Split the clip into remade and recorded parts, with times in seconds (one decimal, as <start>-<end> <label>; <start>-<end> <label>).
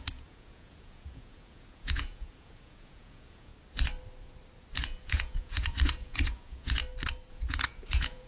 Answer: 0.0-3.5 remade; 3.5-4.8 recorded; 4.8-6.8 remade; 6.8-7.3 recorded; 7.3-8.3 remade